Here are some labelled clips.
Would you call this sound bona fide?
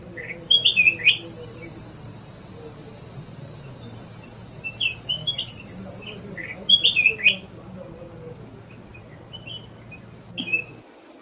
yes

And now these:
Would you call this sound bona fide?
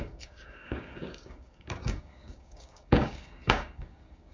no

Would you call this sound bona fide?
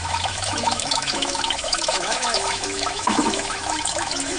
no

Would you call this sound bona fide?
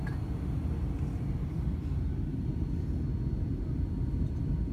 yes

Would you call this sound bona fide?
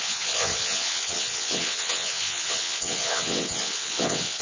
no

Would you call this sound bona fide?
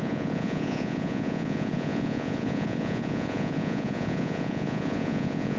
no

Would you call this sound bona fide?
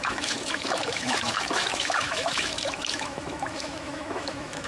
no